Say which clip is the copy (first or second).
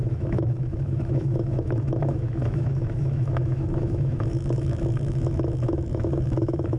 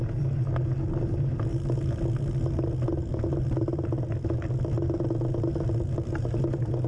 first